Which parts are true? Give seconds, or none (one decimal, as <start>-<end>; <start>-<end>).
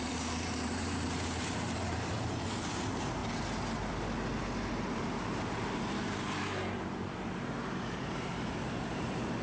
3.2-4.7